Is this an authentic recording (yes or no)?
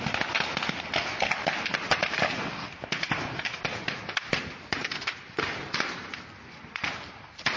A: yes